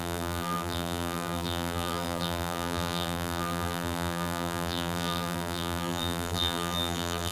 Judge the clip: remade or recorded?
remade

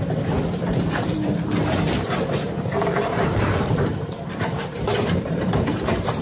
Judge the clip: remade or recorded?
remade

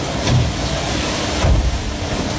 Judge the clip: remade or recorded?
remade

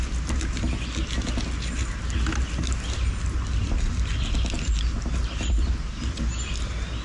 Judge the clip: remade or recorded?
recorded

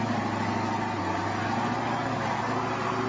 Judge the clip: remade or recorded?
recorded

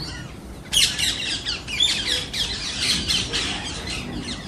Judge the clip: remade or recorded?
remade